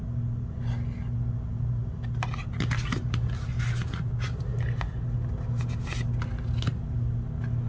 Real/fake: real